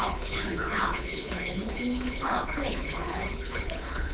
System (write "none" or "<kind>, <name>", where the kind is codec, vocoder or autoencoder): codec, HILCodec